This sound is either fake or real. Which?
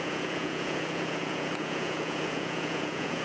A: fake